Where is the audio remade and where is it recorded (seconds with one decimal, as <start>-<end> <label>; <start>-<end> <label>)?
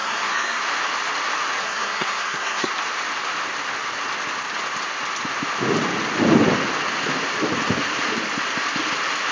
0.0-0.6 remade; 0.6-1.6 recorded; 1.6-2.7 remade; 2.7-9.3 recorded